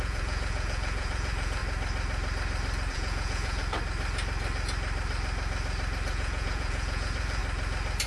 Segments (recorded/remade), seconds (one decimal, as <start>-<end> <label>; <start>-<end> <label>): 0.0-1.6 remade; 1.6-2.9 recorded; 2.9-3.6 remade; 3.6-6.1 recorded; 6.1-7.4 remade; 7.4-8.1 recorded